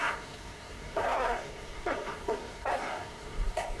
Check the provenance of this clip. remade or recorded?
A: remade